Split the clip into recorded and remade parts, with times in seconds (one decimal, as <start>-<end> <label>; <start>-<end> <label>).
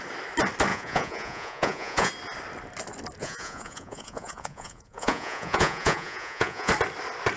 0.0-0.7 recorded; 0.7-2.1 remade; 2.1-3.2 recorded; 3.2-6.7 remade; 6.7-7.4 recorded